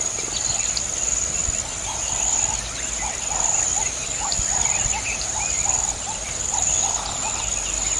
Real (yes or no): yes